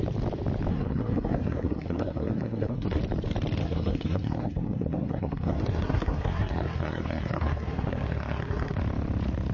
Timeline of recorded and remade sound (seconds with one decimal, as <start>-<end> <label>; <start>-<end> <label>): 0.0-0.7 recorded; 0.7-3.0 remade; 3.0-3.6 recorded; 3.6-8.8 remade; 8.8-9.5 recorded